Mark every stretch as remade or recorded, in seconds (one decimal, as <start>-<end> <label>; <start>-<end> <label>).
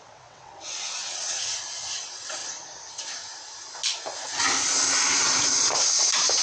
0.0-1.5 remade; 1.5-2.0 recorded; 2.0-2.4 remade; 2.4-6.4 recorded